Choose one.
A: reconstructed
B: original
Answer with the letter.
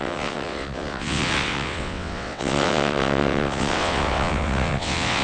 A